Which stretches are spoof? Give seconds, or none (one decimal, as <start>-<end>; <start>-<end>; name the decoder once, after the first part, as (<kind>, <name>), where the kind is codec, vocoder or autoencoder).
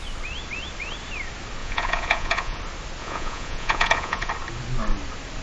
1.6-2.6 (vocoder, Vocos); 3.0-4.3